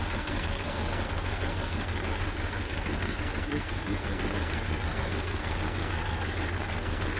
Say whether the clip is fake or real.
fake